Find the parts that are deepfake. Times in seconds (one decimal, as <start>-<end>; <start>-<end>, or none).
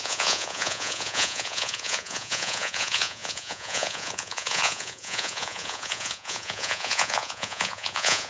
0.0-8.3